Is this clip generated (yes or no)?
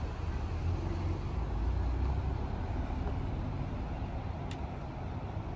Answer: no